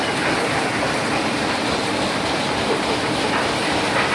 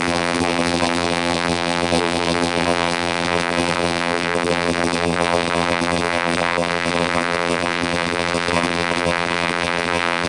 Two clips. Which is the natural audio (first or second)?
first